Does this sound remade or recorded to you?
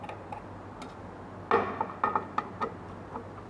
recorded